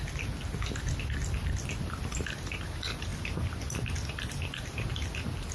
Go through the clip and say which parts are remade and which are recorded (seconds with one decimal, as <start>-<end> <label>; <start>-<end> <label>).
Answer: 0.0-3.1 remade; 3.1-4.1 recorded; 4.1-5.5 remade